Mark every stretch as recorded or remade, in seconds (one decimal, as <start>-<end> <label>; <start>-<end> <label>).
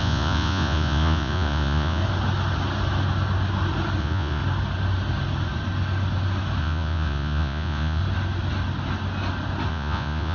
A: 0.0-2.0 remade; 2.0-4.0 recorded; 4.0-4.4 remade; 4.4-6.6 recorded; 6.6-8.0 remade; 8.0-9.7 recorded; 9.7-10.3 remade